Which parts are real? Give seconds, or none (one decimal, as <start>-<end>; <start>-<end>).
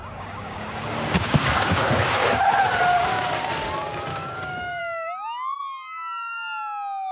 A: 2.3-2.9; 3.5-4.1; 4.8-7.1